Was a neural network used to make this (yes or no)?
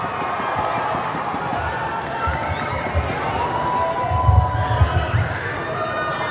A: no